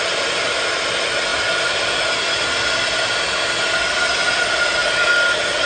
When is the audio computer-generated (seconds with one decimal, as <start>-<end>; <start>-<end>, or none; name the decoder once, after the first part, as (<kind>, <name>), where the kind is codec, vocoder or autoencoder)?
none